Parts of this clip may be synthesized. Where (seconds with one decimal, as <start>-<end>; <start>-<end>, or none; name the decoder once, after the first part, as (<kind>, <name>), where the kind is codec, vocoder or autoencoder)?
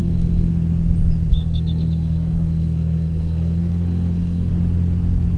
0.0-0.5 (codec, SNAC); 1.3-4.5